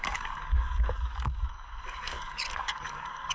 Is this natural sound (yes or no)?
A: no